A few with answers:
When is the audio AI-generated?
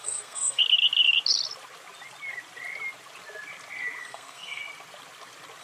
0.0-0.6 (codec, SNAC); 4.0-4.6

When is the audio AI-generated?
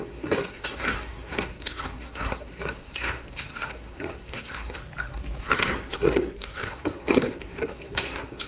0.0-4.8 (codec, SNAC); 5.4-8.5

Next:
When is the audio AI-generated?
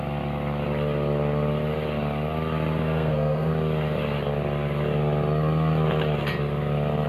2.8-3.5 (codec, SNAC)